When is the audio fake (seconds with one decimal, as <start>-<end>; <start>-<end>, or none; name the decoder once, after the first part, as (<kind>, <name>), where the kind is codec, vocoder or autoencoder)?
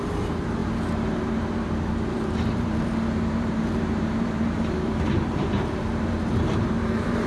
0.0-7.3 (vocoder, BigVGAN v2)